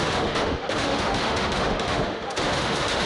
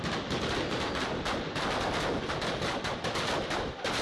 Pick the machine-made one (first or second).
first